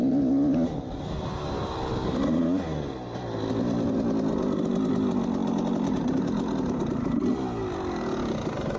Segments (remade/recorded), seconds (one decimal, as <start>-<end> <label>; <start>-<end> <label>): 0.0-8.8 recorded